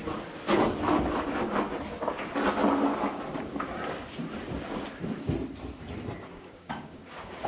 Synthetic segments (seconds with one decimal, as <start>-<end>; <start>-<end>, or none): 6.3-7.5